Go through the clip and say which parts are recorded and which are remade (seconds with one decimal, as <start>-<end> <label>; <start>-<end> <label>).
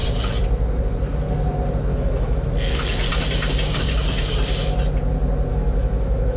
0.0-1.9 recorded; 1.9-2.5 remade; 2.5-5.5 recorded; 5.5-6.4 remade